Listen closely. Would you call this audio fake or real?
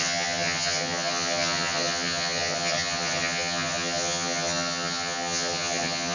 fake